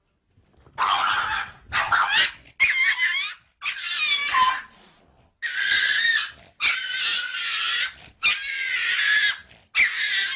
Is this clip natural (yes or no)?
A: yes